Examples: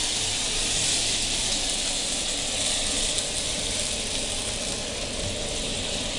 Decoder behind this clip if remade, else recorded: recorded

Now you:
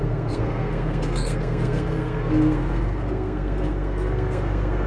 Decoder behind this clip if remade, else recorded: remade, codec, SNAC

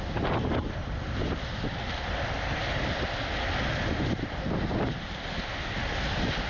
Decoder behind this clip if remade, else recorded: recorded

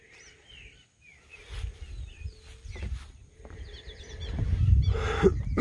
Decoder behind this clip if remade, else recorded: recorded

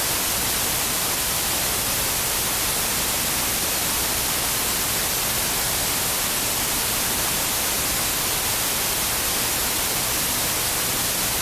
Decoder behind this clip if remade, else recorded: recorded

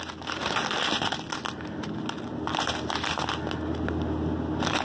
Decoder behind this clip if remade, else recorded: recorded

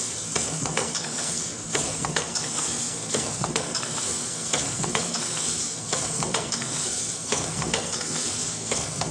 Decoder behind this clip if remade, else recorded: remade, codec, SNAC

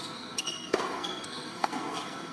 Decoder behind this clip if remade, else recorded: remade, codec, SNAC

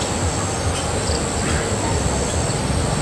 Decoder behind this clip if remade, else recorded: recorded